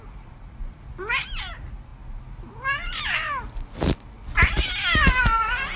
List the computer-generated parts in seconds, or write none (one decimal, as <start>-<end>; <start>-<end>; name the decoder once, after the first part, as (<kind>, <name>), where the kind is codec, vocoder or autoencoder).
none